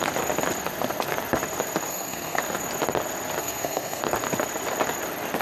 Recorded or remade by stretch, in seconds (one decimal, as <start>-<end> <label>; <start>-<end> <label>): 0.0-1.9 recorded; 1.9-2.4 remade; 2.4-3.4 recorded; 3.4-4.0 remade; 4.0-5.4 recorded